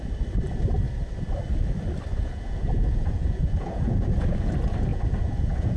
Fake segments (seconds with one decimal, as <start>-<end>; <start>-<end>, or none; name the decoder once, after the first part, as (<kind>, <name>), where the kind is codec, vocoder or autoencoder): 2.1-4.5 (vocoder, Vocos); 4.9-5.8